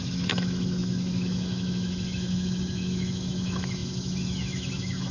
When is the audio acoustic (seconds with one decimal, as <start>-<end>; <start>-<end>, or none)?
none

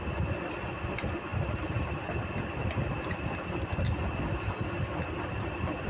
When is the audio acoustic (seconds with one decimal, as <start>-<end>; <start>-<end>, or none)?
0.0-5.9

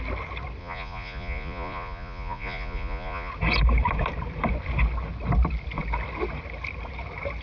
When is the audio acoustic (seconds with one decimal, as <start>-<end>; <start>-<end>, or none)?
0.0-0.6; 3.3-7.4

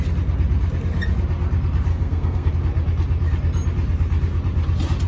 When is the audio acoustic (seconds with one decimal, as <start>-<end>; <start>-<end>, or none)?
0.0-1.9; 2.5-5.1

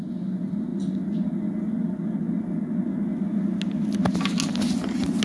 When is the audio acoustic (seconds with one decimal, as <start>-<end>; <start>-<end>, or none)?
0.0-5.2